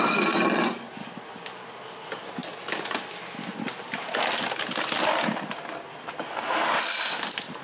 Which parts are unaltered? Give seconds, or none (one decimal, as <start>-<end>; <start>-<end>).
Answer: 0.0-7.6